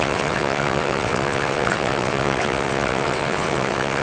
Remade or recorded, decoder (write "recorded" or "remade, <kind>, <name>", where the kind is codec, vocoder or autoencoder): remade, vocoder, WaveNeXt